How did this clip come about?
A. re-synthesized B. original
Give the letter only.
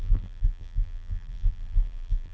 A